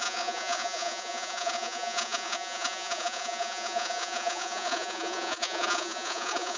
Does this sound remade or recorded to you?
remade